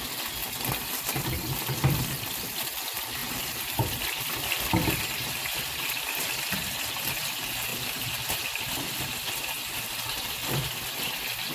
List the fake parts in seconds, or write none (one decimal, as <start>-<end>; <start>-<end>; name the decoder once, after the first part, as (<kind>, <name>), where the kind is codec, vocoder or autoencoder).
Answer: none